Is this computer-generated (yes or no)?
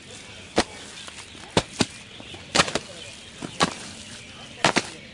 no